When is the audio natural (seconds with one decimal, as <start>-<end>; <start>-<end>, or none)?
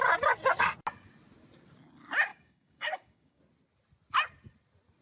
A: 0.0-2.3; 3.4-5.0